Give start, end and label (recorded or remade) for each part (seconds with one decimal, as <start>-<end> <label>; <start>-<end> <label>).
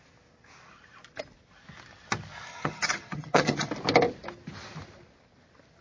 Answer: 0.0-2.5 recorded; 2.5-3.7 remade; 3.7-5.8 recorded